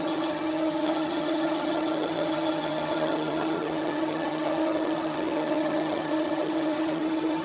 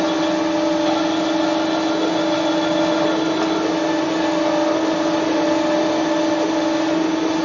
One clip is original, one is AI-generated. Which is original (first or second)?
second